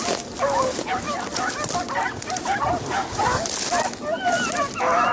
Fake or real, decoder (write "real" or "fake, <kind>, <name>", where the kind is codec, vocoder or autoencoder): real